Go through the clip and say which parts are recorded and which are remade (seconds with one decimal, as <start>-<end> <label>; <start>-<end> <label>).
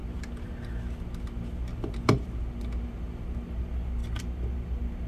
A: 0.0-5.1 recorded